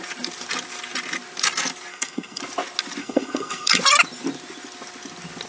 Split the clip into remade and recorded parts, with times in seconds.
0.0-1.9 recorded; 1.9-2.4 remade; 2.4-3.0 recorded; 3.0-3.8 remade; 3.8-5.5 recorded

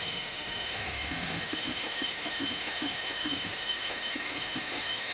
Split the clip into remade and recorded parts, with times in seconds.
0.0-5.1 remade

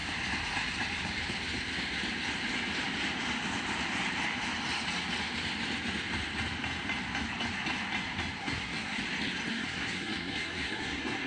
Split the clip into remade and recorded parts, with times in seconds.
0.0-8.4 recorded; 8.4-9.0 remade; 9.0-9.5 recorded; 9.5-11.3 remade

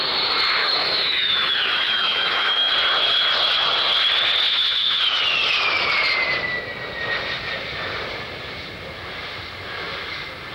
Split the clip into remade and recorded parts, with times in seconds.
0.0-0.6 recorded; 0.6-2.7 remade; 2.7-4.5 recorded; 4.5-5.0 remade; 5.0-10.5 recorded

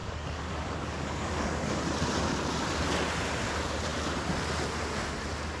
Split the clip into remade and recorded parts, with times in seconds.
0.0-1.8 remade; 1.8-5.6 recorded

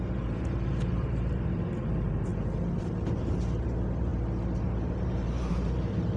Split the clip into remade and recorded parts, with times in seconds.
0.0-2.3 remade; 2.3-2.8 recorded; 2.8-4.1 remade; 4.1-4.8 recorded; 4.8-6.2 remade